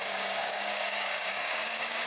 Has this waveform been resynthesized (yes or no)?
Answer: yes